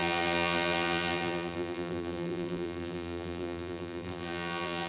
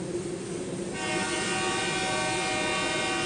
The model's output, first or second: first